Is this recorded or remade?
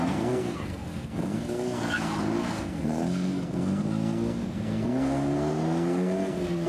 remade